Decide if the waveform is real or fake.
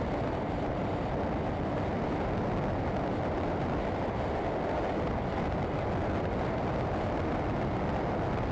real